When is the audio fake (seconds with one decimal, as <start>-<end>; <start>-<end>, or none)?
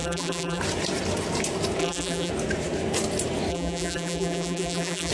0.0-0.6; 1.8-2.3; 3.5-5.1